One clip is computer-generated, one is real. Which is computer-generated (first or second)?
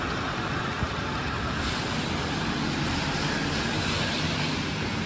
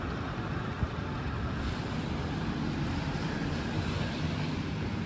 second